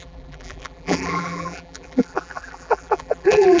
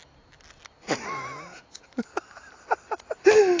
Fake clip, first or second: first